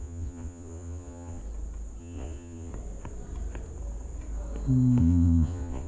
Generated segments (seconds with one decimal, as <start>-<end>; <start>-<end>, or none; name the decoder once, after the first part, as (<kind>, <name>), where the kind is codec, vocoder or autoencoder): 0.0-1.4 (vocoder, Vocos); 2.0-2.7; 5.0-5.9

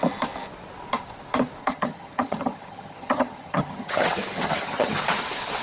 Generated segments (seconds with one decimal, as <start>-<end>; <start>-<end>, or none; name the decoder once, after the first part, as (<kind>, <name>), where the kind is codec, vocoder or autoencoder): 1.6-5.0 (vocoder, HiFi-GAN)

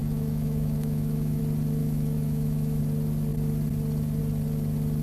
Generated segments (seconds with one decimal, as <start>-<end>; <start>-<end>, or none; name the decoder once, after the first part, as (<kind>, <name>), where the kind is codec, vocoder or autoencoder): 0.0-1.4 (autoencoder, DAC-VAE); 1.8-2.8

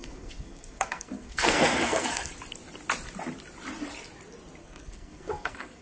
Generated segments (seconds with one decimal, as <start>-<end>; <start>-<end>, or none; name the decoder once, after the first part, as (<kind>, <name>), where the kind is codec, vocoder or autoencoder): 0.0-2.3 (codec, SNAC); 4.6-5.8

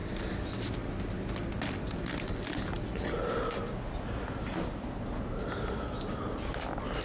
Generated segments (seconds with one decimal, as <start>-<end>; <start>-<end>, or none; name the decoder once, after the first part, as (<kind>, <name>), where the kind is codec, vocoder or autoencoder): none

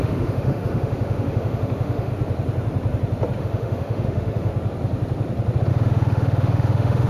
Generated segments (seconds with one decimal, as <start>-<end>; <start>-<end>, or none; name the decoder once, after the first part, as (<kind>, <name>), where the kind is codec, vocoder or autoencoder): 0.0-2.1 (autoencoder, DAC-VAE); 3.4-4.5; 5.7-7.1